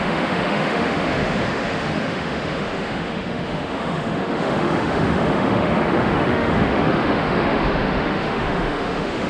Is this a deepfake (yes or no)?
yes